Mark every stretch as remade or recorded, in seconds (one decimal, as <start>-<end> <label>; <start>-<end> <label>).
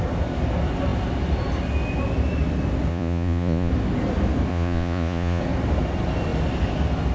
0.0-2.9 recorded; 2.9-3.7 remade; 3.7-4.5 recorded; 4.5-5.4 remade; 5.4-7.1 recorded